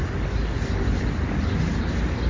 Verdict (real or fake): real